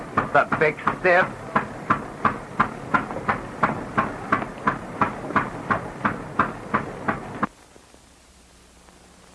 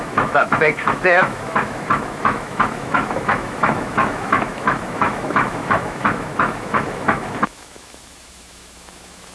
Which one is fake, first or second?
second